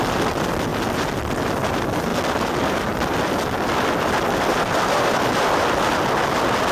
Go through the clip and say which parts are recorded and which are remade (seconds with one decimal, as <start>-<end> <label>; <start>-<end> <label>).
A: 0.0-6.7 recorded